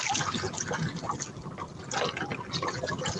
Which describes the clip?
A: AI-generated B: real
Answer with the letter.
B